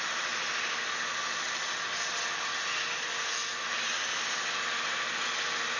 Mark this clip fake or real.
real